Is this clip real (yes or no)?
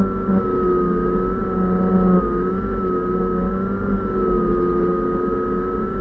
yes